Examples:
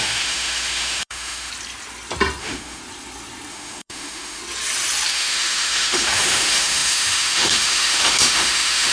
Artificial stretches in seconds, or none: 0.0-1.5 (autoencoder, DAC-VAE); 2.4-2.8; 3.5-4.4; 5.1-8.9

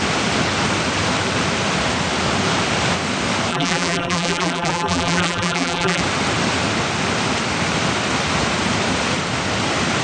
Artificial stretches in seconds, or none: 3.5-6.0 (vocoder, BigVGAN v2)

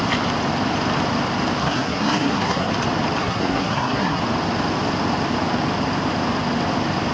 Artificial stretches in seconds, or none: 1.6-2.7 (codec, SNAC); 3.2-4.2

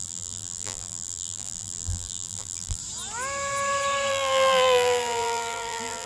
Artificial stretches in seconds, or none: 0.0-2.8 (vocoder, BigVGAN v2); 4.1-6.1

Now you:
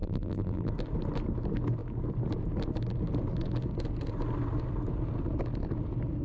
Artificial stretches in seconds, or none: 0.0-0.7 (vocoder, BigVGAN v2)

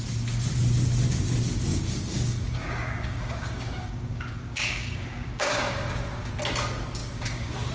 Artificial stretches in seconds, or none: 1.7-6.3 (codec, DAC); 7.0-7.7

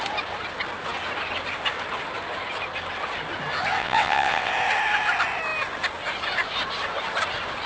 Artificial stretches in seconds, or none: 3.8-4.5 (vocoder, WaveNeXt)